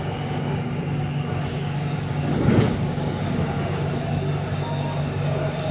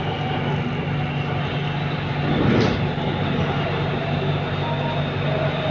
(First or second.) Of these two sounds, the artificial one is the first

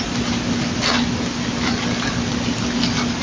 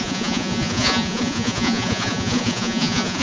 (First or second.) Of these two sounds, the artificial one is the second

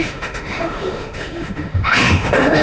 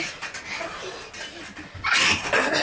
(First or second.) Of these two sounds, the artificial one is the first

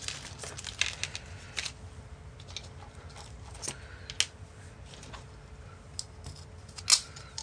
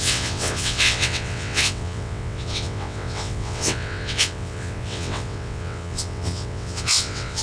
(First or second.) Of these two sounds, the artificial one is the second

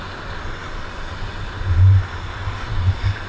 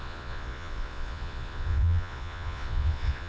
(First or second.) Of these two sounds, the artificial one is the second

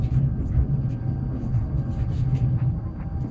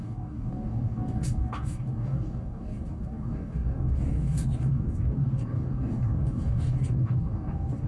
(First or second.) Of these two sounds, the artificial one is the second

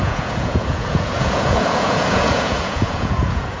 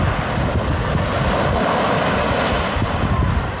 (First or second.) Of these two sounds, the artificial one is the first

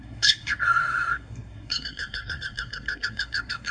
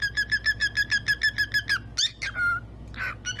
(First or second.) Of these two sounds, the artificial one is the first